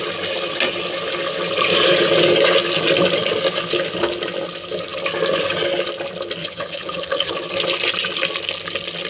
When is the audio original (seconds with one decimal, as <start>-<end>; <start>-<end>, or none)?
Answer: 0.0-6.4; 7.3-9.1